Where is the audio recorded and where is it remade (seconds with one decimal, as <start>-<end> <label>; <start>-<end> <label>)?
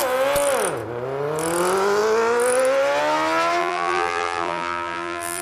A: 0.0-3.6 recorded; 3.6-5.4 remade